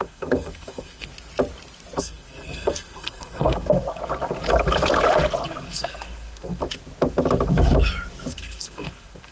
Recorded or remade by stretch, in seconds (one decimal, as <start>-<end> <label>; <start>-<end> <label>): 0.0-1.1 remade; 1.1-2.0 recorded; 2.0-3.8 remade; 3.8-5.6 recorded; 5.6-6.6 remade; 6.6-8.3 recorded; 8.3-9.3 remade